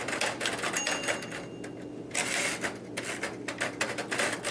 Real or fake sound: real